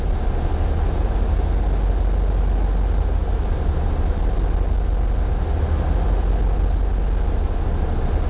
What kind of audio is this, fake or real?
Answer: real